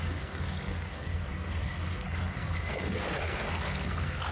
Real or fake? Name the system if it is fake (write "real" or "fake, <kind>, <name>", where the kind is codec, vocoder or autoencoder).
fake, codec, SNAC